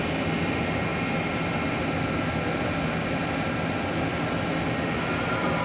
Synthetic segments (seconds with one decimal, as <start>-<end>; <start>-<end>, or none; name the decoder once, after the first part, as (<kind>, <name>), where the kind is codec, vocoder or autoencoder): none